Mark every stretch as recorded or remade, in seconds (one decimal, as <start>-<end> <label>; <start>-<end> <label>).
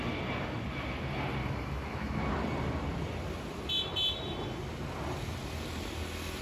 0.0-1.4 recorded; 1.4-2.2 remade; 2.2-6.4 recorded